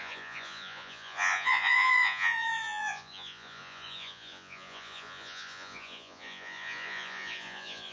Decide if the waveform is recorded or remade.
remade